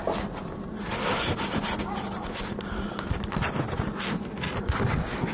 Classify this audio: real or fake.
real